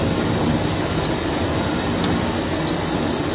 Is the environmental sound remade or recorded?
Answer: recorded